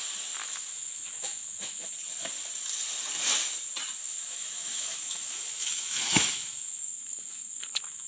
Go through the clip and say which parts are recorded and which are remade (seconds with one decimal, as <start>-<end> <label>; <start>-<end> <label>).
0.0-0.4 recorded; 0.4-1.9 remade; 1.9-4.0 recorded; 4.0-8.1 remade